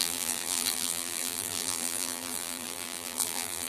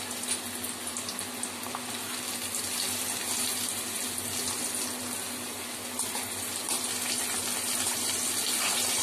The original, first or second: second